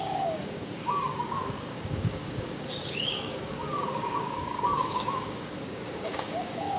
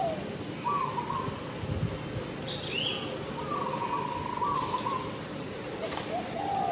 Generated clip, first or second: first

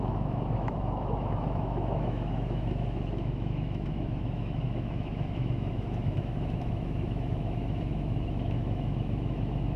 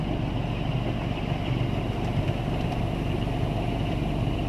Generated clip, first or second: first